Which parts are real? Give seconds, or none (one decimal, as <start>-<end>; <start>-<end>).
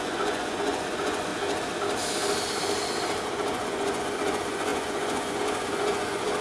1.3-3.2